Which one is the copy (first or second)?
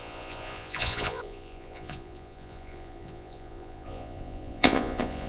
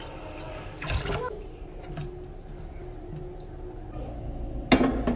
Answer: first